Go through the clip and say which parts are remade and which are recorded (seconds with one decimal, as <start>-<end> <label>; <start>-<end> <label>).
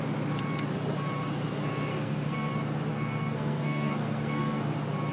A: 0.0-1.9 recorded; 1.9-2.5 remade; 2.5-2.9 recorded; 2.9-4.6 remade; 4.6-5.1 recorded